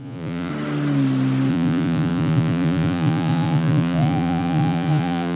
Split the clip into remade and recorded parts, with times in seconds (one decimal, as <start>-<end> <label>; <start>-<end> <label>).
0.0-0.5 remade; 0.5-1.5 recorded; 1.5-5.4 remade

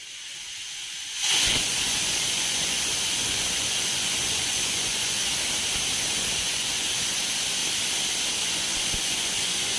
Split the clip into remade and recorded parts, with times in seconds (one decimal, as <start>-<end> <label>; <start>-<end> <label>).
0.0-5.3 remade; 5.3-6.0 recorded; 6.0-7.6 remade; 7.6-8.3 recorded; 8.3-9.8 remade

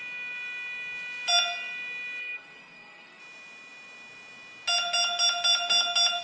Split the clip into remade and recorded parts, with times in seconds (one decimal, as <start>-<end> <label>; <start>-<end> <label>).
0.0-2.2 recorded; 2.2-3.2 remade; 3.2-6.2 recorded

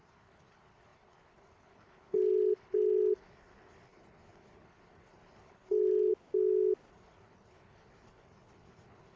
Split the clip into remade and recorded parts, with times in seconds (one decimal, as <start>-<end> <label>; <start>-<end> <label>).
0.0-6.1 remade; 6.1-6.9 recorded; 6.9-9.2 remade

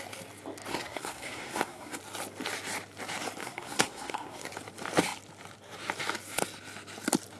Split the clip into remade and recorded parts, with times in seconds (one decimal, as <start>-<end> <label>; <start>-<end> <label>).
0.0-0.7 recorded; 0.7-2.0 remade; 2.0-3.4 recorded; 3.4-4.5 remade; 4.5-7.4 recorded

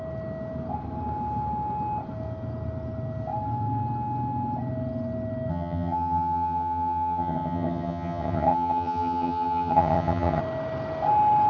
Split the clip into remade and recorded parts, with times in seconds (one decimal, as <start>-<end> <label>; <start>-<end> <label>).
0.0-5.5 recorded; 5.5-10.4 remade; 10.4-11.5 recorded

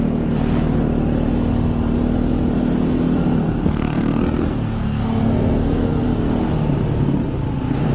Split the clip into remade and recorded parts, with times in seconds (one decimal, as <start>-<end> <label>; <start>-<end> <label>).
0.0-3.4 recorded; 3.4-6.3 remade; 6.3-7.9 recorded